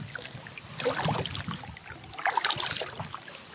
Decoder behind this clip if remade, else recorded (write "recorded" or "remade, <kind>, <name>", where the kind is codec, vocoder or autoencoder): recorded